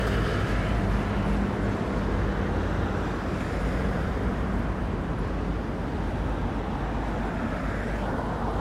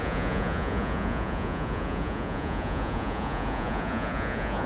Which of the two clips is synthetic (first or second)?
second